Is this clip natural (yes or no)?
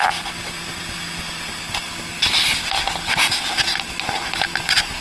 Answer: yes